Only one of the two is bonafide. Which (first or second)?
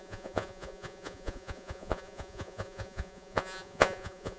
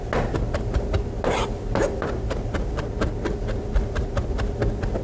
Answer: second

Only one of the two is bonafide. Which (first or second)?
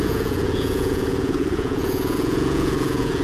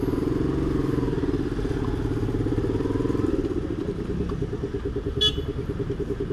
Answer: second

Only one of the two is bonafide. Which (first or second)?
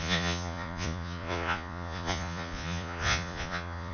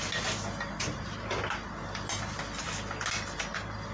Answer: second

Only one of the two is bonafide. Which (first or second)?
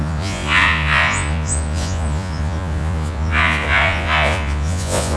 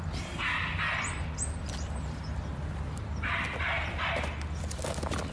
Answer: second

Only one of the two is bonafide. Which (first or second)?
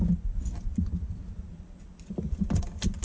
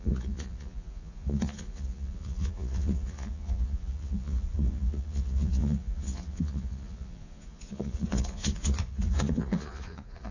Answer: first